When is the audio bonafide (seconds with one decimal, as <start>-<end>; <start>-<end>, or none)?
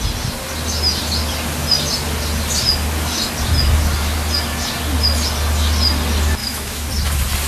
0.0-6.4; 6.9-7.5